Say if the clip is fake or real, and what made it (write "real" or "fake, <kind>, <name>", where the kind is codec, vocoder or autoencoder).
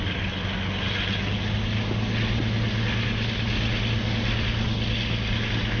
real